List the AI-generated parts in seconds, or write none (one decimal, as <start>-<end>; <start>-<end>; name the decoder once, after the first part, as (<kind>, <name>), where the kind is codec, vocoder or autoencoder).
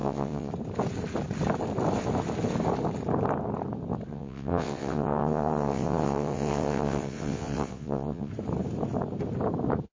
0.0-0.5 (vocoder, WaveNeXt); 4.1-8.3